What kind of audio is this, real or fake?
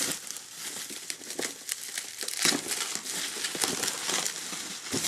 real